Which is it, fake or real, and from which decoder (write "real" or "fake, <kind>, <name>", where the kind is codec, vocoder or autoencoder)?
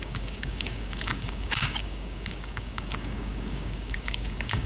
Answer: fake, codec, DAC